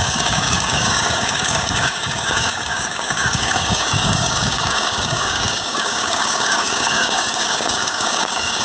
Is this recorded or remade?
remade